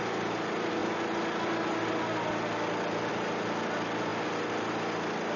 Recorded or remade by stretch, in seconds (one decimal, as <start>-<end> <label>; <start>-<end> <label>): 0.0-5.4 recorded